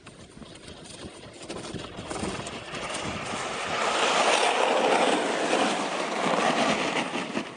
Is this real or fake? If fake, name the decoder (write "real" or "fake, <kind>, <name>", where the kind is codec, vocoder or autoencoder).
real